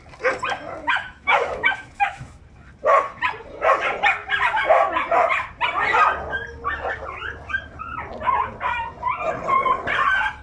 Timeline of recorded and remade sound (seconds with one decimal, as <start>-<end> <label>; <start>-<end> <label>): 0.0-0.8 recorded; 0.8-2.4 remade; 2.4-10.4 recorded